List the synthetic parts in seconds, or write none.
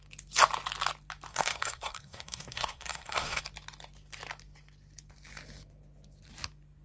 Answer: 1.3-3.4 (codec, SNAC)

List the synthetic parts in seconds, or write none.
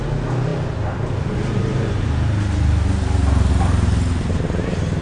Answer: none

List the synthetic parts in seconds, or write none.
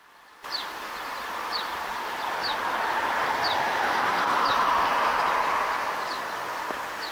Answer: none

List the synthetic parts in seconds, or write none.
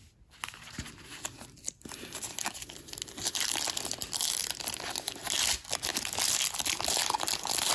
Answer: none